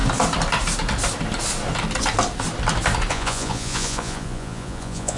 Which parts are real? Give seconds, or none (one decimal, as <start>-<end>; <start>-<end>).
0.0-3.1